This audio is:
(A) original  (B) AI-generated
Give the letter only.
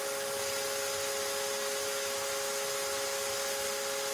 A